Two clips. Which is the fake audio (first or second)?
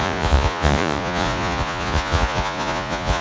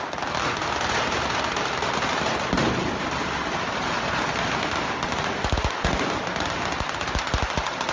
first